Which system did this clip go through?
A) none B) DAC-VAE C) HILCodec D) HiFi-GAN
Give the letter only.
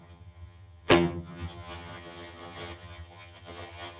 D